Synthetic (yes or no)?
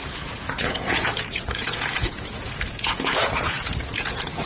yes